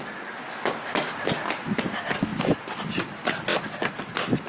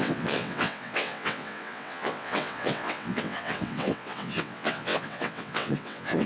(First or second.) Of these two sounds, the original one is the first